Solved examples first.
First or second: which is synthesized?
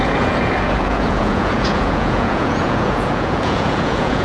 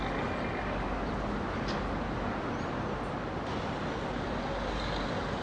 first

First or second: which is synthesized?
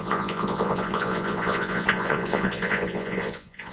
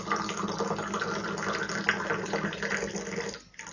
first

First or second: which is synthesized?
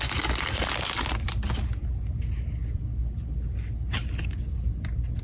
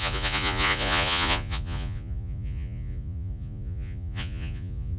second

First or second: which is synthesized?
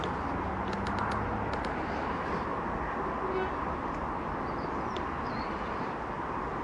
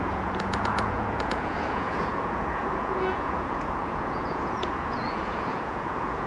second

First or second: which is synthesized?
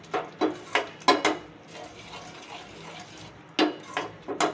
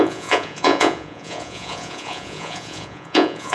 second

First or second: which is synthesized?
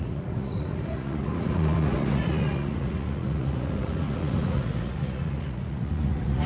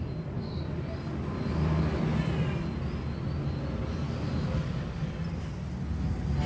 first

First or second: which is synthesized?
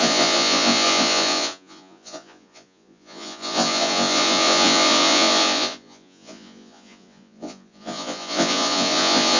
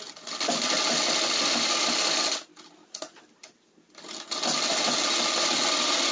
first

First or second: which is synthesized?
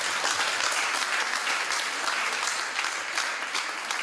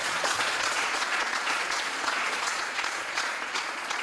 second